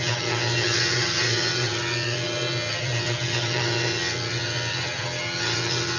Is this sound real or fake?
fake